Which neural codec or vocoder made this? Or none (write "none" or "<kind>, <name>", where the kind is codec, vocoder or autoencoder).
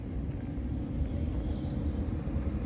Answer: none